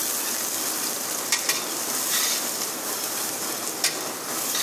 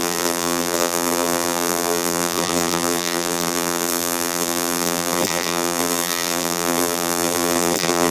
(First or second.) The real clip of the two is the first